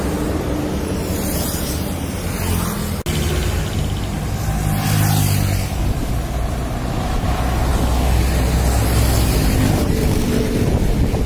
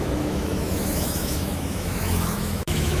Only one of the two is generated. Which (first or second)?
second